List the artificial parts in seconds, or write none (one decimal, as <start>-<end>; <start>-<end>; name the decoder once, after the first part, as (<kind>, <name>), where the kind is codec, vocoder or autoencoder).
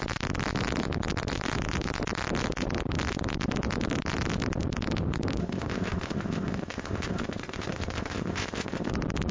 5.4-8.9 (codec, ZipCodec)